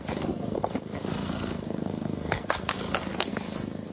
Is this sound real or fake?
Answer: fake